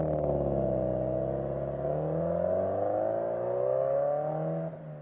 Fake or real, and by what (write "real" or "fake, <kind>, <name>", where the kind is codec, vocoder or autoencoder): real